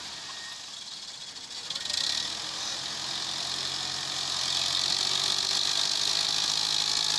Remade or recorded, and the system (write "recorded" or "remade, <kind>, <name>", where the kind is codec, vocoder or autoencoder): recorded